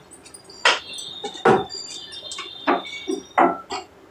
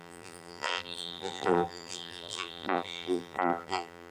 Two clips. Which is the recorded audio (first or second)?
first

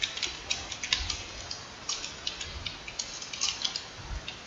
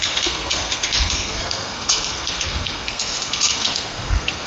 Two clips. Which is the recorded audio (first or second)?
first